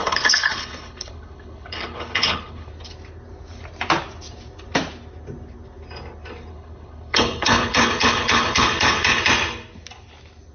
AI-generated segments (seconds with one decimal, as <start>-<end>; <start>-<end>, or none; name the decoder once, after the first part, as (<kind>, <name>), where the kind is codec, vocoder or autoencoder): 0.0-2.7 (codec, HILCodec); 6.5-9.2